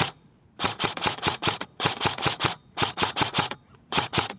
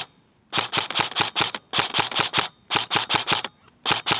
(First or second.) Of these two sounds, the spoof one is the first